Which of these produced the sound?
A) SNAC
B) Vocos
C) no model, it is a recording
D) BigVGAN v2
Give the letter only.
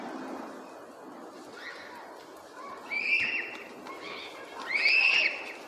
C